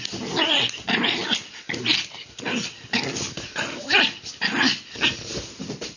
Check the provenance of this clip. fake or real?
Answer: real